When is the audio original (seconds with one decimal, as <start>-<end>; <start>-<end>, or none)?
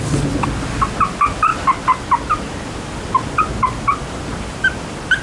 0.0-4.3